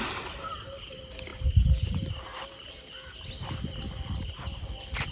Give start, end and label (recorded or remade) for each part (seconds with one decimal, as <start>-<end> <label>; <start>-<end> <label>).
0.0-5.1 recorded